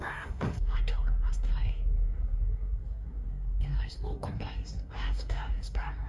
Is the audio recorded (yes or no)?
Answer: no